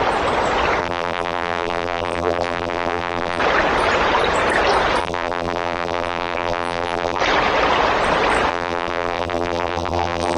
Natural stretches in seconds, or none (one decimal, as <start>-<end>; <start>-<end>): 0.0-0.8; 3.4-5.0; 7.2-8.5